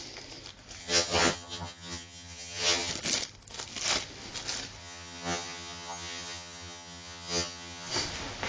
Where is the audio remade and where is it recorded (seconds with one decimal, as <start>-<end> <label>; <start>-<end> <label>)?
0.0-0.8 recorded; 0.8-2.9 remade; 2.9-4.8 recorded; 4.8-7.9 remade; 7.9-8.5 recorded